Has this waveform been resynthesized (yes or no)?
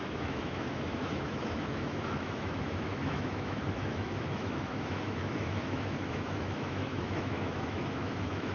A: yes